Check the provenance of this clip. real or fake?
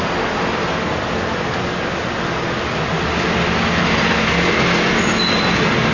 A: real